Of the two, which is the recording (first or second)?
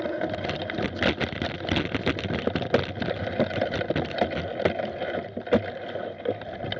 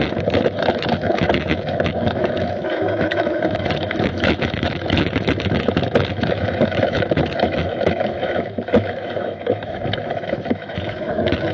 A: first